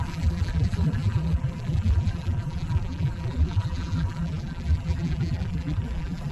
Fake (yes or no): yes